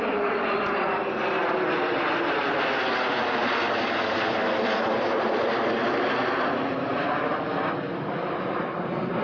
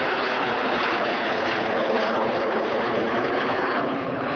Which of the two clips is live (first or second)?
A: first